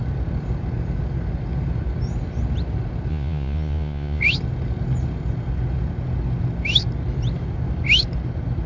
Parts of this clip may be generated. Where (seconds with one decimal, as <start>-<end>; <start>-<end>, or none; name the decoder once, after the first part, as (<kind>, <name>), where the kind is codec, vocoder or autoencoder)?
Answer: 3.1-4.2 (vocoder, Vocos)